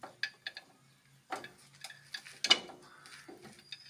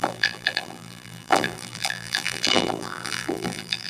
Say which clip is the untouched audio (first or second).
first